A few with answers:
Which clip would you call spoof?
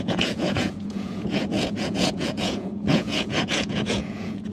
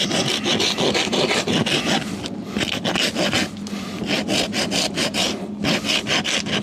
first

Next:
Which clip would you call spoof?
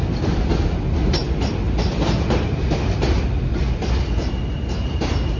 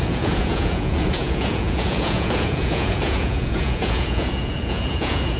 second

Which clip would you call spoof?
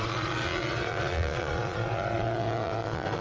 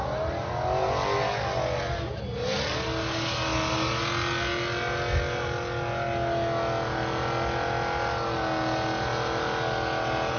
first